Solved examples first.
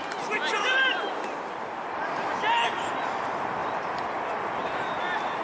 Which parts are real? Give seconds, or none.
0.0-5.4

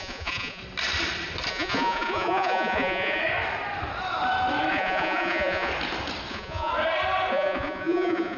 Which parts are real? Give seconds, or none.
0.6-1.5; 3.2-4.7; 5.7-6.3; 6.7-7.3

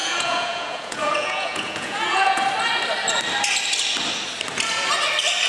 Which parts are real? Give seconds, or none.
2.4-5.5

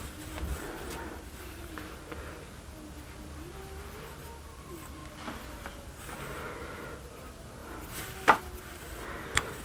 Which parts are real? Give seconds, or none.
0.0-9.6

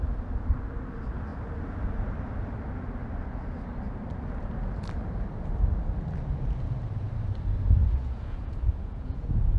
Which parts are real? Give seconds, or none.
0.0-7.8